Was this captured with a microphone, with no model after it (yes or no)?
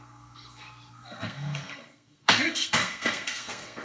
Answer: no